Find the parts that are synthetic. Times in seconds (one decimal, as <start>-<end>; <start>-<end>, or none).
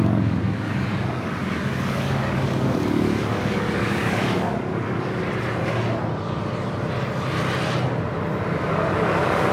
0.0-5.3; 8.6-9.5